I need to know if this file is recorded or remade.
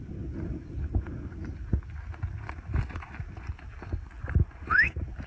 recorded